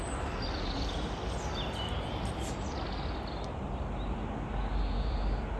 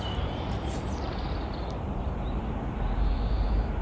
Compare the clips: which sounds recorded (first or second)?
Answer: first